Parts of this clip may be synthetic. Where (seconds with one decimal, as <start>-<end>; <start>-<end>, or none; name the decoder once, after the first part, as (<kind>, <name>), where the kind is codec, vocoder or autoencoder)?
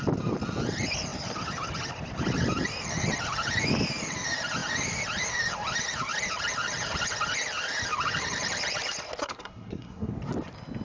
9.2-10.1 (codec, SNAC)